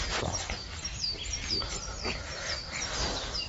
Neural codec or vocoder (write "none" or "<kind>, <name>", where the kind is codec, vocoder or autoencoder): vocoder, BigVGAN v2